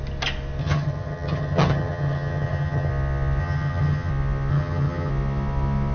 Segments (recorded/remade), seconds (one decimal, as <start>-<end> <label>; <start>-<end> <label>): 0.0-0.6 recorded; 0.6-2.9 remade; 2.9-3.4 recorded; 3.4-4.1 remade; 4.1-4.5 recorded; 4.5-5.1 remade; 5.1-5.9 recorded